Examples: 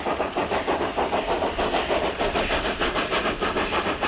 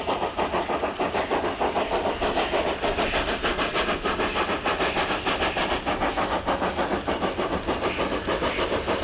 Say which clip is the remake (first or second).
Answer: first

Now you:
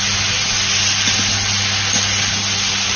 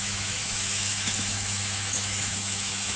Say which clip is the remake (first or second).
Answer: second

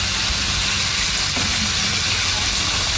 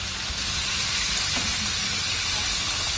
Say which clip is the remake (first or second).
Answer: second